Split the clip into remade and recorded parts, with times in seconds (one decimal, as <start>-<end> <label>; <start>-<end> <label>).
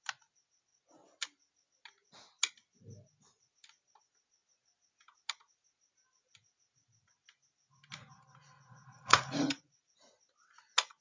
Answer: 0.0-8.4 recorded; 8.4-9.9 remade; 9.9-11.0 recorded